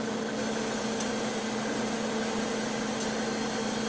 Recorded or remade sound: recorded